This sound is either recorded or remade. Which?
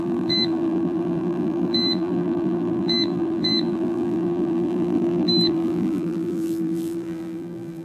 remade